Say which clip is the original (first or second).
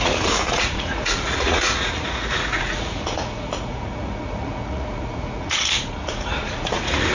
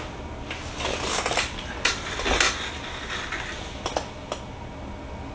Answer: second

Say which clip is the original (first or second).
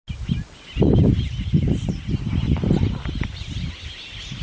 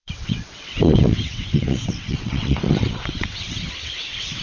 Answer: first